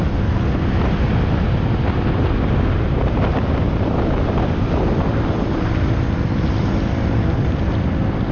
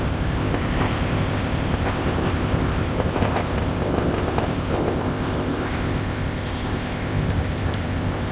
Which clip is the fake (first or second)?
second